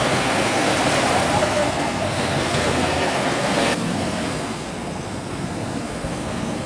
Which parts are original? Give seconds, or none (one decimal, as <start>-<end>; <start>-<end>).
0.7-1.4